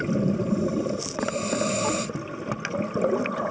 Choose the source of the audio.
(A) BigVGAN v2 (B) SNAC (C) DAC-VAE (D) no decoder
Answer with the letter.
D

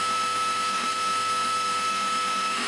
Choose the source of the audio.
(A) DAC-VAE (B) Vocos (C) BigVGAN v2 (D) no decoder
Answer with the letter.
A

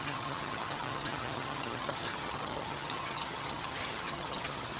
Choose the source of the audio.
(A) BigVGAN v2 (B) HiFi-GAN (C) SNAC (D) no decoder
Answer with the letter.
B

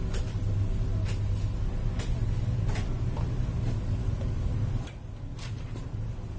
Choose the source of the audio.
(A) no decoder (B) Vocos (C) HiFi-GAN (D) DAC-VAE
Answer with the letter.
A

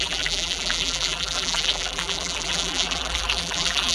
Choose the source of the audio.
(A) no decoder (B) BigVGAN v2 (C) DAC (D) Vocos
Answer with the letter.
B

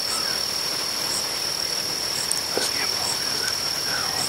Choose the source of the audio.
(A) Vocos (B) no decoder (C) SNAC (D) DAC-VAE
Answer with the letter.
B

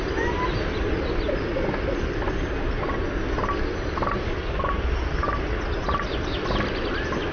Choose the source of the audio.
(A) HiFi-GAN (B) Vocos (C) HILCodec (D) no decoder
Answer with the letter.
D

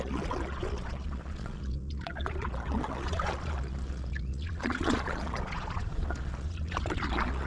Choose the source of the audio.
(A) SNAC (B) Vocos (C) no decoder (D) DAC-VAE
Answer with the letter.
B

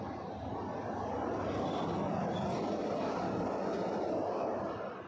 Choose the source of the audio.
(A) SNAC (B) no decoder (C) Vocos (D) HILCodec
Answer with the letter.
B